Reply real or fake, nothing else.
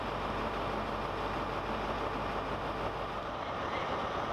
real